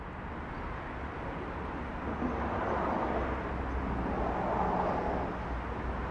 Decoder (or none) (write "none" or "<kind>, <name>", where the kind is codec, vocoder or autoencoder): none